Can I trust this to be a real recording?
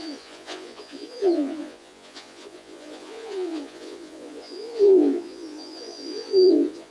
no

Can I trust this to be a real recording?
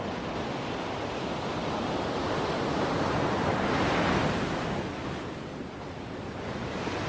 yes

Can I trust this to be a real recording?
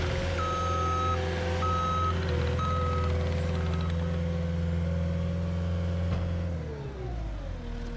yes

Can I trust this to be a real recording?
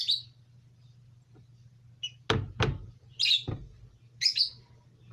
yes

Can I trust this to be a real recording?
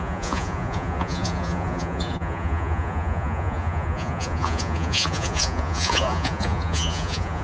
no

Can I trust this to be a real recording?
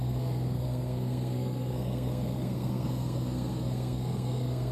no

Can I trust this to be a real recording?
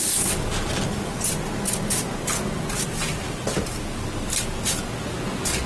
yes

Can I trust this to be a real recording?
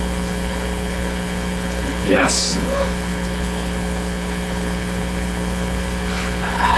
no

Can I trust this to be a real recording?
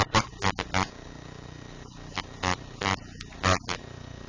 yes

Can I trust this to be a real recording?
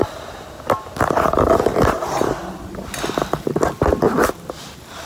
yes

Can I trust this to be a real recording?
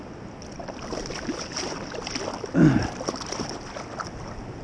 yes